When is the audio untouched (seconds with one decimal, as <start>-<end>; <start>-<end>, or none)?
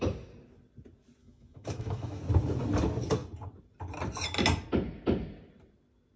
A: 0.0-1.2; 2.2-6.2